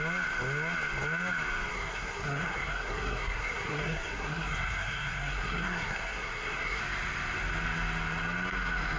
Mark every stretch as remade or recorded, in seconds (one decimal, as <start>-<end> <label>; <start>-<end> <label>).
0.0-1.7 recorded; 1.7-6.8 remade; 6.8-9.0 recorded